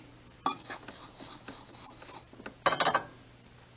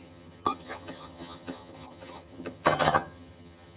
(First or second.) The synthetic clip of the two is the second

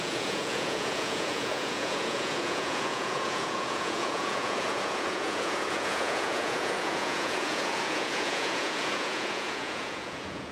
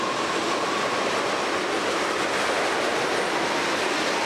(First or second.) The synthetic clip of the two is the first